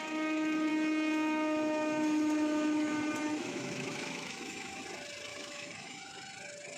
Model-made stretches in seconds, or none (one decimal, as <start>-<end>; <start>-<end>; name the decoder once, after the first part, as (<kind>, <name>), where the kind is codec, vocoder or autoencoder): 0.7-4.8 (autoencoder, DAC-VAE); 5.3-6.1